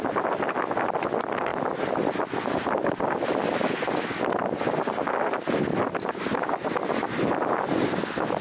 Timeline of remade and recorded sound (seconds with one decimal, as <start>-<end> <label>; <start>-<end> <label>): 0.0-8.4 recorded